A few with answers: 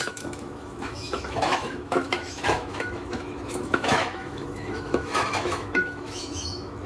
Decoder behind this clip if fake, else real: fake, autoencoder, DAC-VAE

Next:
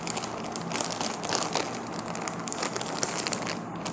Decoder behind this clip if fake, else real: real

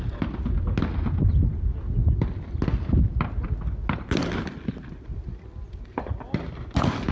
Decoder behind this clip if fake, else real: real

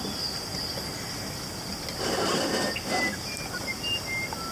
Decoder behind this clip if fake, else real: real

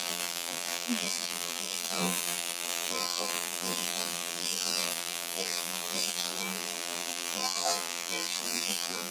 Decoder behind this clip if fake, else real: fake, vocoder, BigVGAN v2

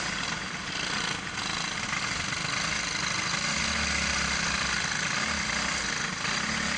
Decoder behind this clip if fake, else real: real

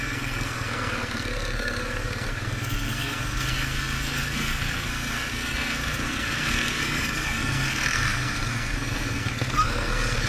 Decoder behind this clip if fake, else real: fake, codec, SNAC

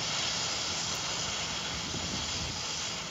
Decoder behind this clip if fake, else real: real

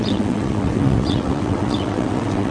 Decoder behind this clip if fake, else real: fake, vocoder, WaveNeXt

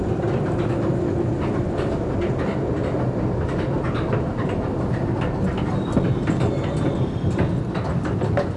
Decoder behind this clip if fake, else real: real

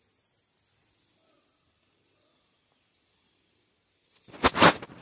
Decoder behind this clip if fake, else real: real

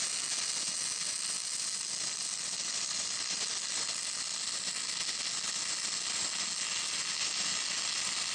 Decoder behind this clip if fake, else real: real